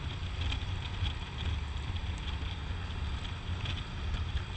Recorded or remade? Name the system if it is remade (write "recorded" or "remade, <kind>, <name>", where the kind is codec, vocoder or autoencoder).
recorded